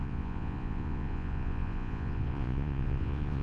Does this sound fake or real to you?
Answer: fake